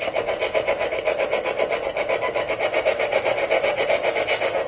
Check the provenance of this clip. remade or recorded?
recorded